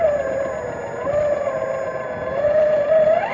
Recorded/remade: recorded